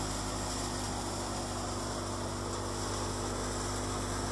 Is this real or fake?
real